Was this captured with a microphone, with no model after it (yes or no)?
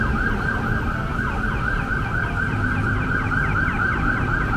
no